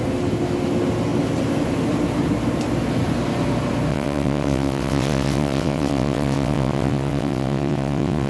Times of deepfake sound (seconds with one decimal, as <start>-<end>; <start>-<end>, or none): 3.9-8.3